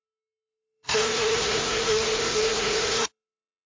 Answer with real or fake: fake